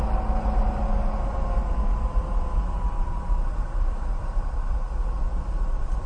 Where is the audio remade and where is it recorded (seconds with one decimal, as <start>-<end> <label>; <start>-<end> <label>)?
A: 0.0-6.1 recorded